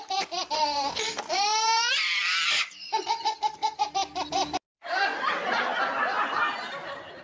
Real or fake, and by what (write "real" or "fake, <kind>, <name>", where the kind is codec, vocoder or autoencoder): real